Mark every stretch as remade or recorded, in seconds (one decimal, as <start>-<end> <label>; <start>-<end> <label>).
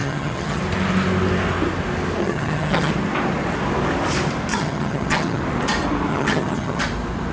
0.0-0.6 remade; 0.6-2.2 recorded; 2.2-2.9 remade; 2.9-4.5 recorded; 4.5-5.4 remade; 5.4-6.1 recorded; 6.1-6.8 remade; 6.8-7.3 recorded